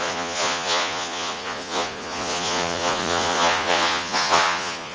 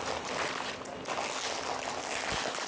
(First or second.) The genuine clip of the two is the second